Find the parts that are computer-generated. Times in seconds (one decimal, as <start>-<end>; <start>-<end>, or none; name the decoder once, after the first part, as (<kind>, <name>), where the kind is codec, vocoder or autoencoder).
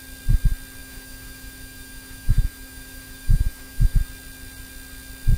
0.8-4.0 (autoencoder, DAC-VAE)